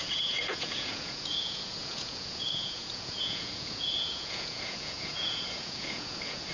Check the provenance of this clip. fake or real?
fake